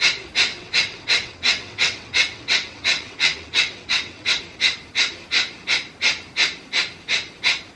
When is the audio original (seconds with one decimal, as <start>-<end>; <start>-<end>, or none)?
0.0-0.5; 4.4-7.8